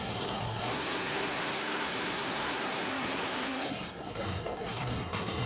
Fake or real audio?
fake